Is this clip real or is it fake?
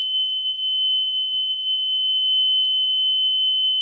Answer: real